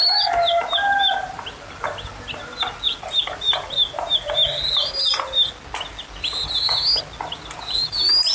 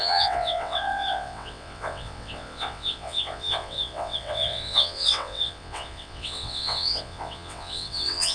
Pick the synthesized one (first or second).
second